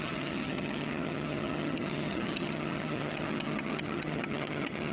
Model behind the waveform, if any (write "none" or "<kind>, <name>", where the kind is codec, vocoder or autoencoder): vocoder, HiFi-GAN